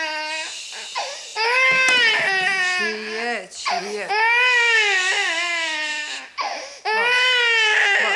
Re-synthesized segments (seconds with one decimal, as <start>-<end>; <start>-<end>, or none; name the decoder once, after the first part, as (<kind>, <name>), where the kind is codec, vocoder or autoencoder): none